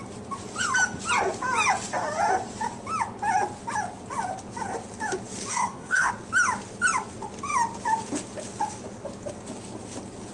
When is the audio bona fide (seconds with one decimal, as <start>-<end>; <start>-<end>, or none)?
0.0-5.5; 6.1-10.3